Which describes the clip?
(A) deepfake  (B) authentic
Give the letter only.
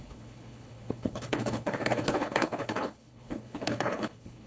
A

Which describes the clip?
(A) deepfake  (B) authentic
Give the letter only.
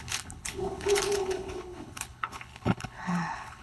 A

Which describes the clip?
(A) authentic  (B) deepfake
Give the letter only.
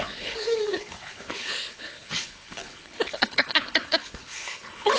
B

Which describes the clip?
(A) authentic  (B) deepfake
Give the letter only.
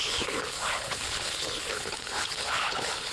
B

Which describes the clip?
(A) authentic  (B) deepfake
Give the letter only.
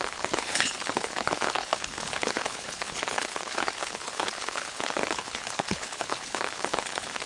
B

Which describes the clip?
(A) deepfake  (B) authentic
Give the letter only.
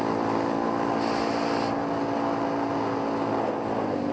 B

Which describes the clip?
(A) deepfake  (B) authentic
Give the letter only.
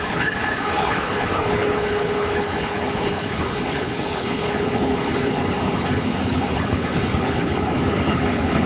A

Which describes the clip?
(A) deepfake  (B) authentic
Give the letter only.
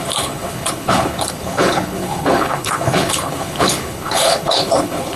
A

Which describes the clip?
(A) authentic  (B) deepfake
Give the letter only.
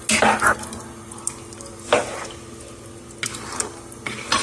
A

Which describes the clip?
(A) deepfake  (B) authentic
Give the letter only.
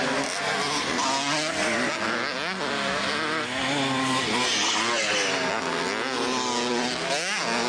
B